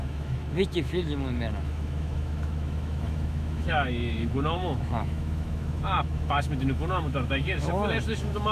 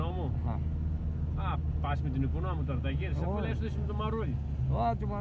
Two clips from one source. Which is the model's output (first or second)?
first